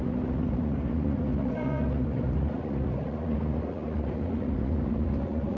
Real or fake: fake